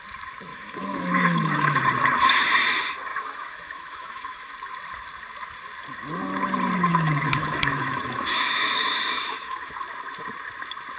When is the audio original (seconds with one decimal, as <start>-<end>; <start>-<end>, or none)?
0.0-0.5; 1.8-3.1; 4.5-6.9; 9.7-11.0